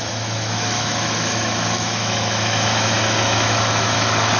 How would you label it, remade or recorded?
remade